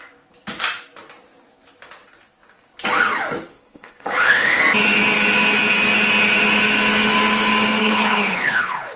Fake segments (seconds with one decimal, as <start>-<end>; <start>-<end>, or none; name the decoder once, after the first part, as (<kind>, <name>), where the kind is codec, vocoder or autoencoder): 3.5-4.6 (codec, HILCodec); 7.8-9.0